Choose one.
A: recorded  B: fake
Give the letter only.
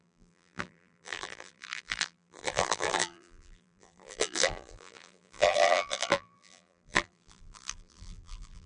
B